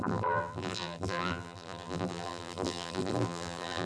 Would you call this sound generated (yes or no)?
yes